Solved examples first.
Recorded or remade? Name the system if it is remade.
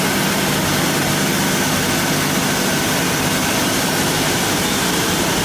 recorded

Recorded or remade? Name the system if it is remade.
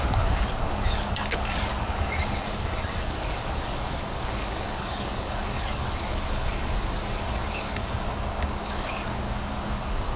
remade, codec, DAC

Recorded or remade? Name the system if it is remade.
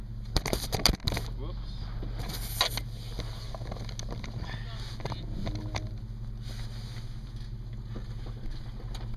recorded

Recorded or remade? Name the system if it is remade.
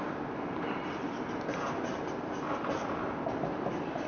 recorded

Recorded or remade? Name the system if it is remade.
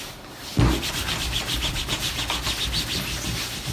recorded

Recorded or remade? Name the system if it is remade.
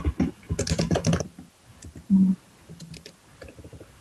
recorded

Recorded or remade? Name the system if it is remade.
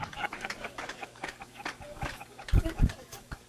remade, codec, DAC